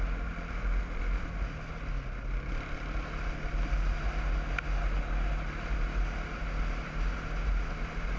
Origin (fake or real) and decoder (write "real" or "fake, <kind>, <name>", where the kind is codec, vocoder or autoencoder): real